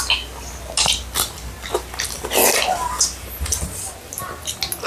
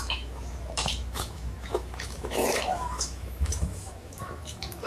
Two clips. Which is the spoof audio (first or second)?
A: second